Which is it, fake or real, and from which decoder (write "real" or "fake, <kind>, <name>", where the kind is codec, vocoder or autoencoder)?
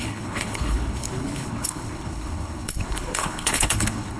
fake, codec, HILCodec